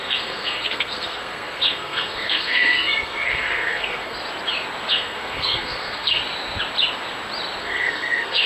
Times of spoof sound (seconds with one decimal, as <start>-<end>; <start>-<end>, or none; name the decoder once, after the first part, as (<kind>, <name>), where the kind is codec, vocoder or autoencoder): 0.0-4.2 (codec, SNAC); 4.9-6.2; 7.6-8.5